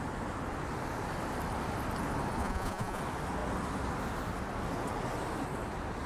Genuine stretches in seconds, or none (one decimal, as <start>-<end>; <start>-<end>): 0.0-2.4; 3.0-6.1